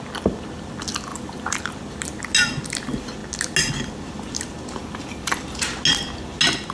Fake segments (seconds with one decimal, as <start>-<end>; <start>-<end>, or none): 1.1-1.6; 4.8-5.4

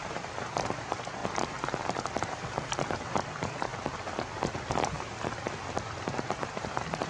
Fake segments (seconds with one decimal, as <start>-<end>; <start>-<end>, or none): 0.0-1.2; 2.2-3.7; 6.4-7.1

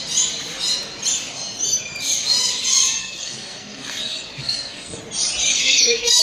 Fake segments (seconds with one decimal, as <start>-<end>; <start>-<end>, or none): 3.0-5.0; 5.5-6.2

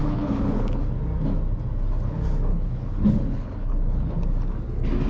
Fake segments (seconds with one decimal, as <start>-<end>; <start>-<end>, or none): 0.0-0.9; 2.5-4.1

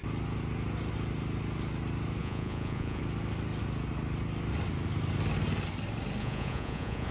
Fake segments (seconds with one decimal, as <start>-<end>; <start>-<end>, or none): 2.2-3.0; 6.2-7.1

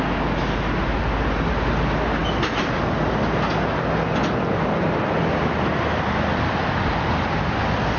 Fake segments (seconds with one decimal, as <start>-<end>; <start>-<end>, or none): none